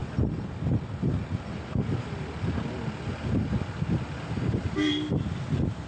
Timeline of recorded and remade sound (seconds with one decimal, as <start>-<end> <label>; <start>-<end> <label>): 0.0-5.9 recorded